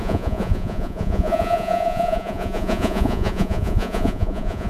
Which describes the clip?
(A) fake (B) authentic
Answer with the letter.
A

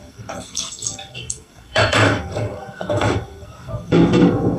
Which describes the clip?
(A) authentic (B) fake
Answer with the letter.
B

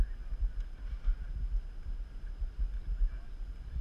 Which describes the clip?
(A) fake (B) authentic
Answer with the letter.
B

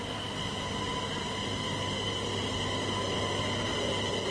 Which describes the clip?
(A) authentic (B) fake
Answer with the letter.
A